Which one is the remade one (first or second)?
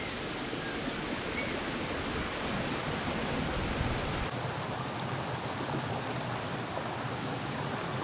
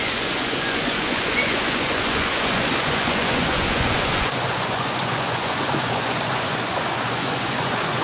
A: second